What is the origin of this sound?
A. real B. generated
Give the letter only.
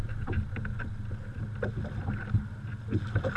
A